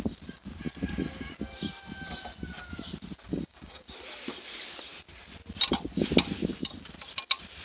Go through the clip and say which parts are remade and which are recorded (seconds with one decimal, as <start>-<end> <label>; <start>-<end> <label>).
0.0-3.3 recorded; 3.3-3.8 remade; 3.8-7.6 recorded

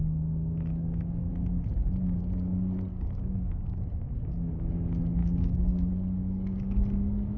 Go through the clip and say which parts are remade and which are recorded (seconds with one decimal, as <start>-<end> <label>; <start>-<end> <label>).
0.0-0.7 recorded; 0.7-1.3 remade; 1.3-2.9 recorded; 2.9-4.5 remade; 4.5-5.2 recorded; 5.2-5.9 remade; 5.9-7.4 recorded

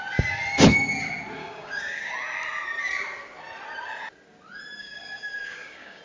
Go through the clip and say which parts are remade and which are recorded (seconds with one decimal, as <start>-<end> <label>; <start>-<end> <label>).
0.0-1.4 recorded; 1.4-2.1 remade; 2.1-4.8 recorded; 4.8-6.0 remade